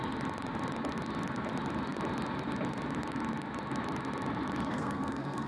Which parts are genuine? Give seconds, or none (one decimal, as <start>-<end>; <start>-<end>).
0.0-4.7